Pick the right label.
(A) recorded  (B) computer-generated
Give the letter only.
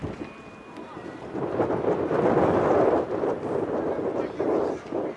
A